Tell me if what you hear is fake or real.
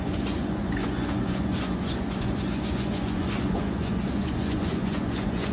fake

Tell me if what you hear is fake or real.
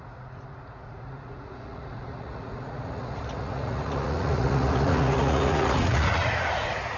fake